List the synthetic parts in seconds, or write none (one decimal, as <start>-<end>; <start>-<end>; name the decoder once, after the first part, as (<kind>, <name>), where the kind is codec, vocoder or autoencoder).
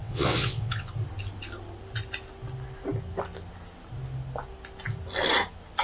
0.0-0.9 (vocoder, WaveNeXt)